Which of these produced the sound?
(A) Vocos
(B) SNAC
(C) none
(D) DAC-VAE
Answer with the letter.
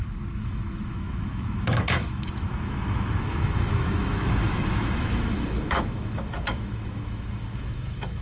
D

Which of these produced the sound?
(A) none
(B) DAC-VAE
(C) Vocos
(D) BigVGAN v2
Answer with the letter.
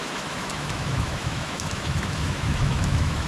B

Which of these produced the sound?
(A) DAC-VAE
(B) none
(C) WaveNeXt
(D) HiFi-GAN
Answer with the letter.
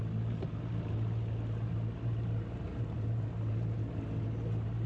B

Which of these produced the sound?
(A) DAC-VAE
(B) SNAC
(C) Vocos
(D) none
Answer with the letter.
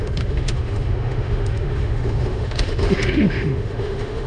A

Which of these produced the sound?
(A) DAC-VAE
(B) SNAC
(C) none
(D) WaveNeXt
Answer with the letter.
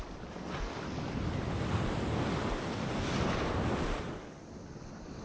C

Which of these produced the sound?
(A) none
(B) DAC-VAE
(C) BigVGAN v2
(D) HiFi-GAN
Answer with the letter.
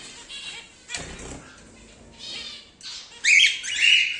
A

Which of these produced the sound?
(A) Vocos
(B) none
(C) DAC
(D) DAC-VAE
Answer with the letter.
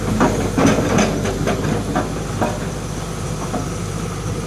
B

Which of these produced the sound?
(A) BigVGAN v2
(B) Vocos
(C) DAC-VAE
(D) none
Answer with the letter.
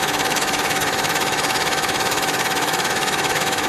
C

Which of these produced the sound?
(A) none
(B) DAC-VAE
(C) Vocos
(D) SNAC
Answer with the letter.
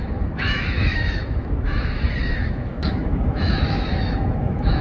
B